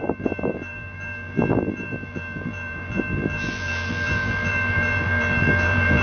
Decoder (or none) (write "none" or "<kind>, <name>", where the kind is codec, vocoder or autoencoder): vocoder, BigVGAN v2